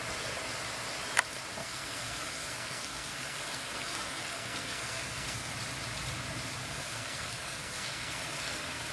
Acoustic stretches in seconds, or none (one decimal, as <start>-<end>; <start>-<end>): 0.0-1.6; 5.5-6.6